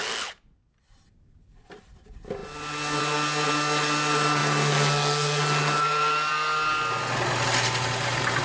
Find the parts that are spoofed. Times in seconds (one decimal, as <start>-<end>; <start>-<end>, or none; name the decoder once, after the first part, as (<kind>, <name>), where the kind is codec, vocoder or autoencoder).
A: none